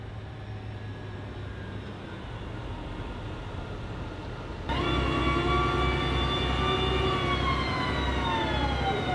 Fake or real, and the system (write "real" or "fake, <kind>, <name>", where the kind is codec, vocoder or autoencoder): real